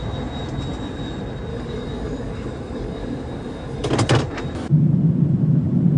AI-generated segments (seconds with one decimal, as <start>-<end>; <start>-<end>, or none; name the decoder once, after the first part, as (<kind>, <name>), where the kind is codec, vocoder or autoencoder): 1.5-3.9 (codec, DAC)